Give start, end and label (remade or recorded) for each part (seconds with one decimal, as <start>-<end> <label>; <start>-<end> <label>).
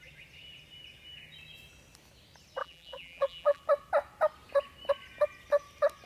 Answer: 0.0-2.6 recorded; 2.6-3.6 remade; 3.6-6.1 recorded